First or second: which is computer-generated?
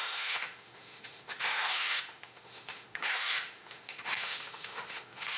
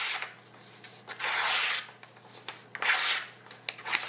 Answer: first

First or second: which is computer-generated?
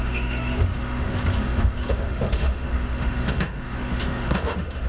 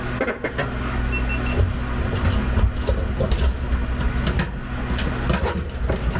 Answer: first